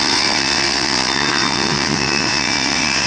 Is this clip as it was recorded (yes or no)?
no